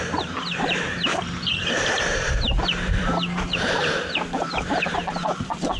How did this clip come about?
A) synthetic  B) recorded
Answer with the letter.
A